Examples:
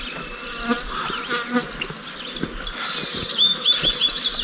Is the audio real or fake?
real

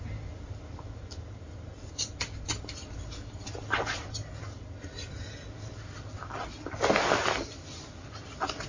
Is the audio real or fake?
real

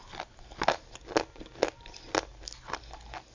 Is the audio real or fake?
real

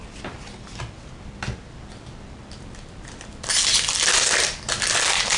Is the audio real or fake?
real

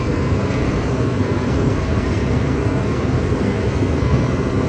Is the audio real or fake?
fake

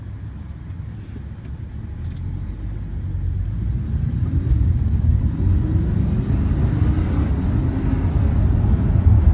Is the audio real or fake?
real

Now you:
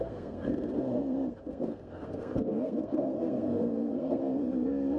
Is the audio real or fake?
fake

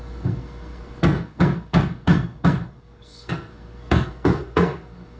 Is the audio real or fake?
fake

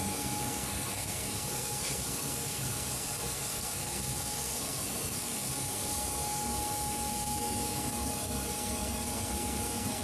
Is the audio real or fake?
fake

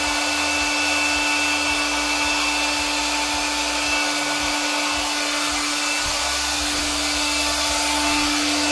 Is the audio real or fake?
real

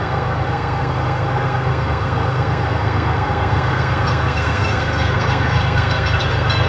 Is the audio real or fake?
fake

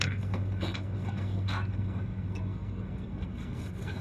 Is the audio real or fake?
fake